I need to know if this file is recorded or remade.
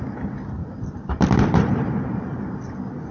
recorded